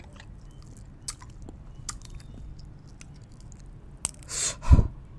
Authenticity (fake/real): real